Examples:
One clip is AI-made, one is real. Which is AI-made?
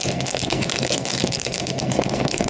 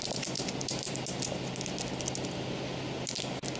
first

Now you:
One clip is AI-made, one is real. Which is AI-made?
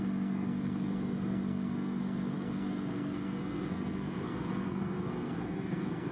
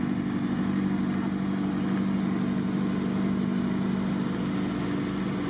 first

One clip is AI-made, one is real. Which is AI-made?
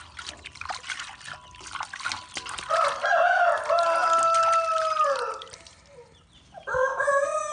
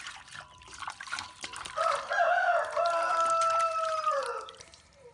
second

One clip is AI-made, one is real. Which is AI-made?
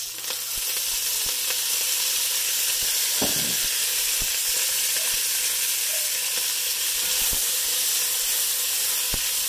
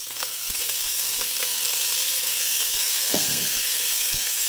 second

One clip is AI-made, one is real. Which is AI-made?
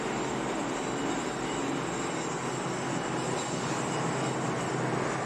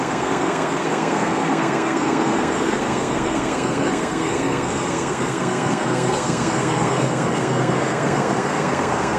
second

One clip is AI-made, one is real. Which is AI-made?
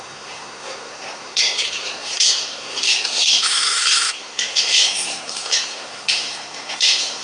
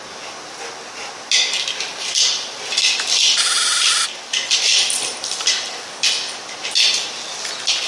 first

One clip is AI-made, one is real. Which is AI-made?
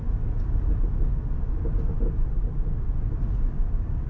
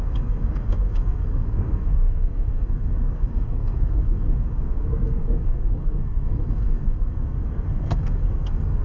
second